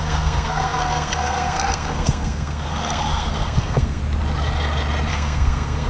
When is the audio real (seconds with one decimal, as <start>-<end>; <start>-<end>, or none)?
4.0-5.1